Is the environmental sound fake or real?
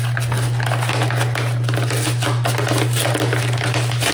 real